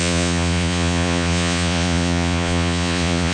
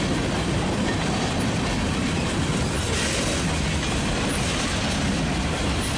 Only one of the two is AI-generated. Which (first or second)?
first